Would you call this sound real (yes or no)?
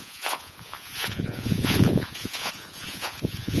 no